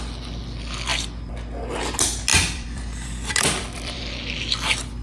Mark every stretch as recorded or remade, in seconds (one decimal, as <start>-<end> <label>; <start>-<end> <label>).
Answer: 0.0-2.3 recorded; 2.3-4.0 remade; 4.0-5.0 recorded